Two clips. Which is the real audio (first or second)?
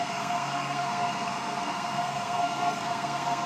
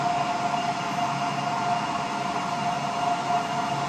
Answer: second